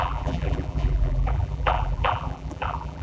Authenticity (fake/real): fake